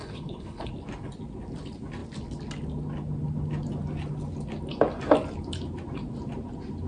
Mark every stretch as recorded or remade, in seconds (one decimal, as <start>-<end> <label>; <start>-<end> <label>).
0.0-0.7 remade; 0.7-6.9 recorded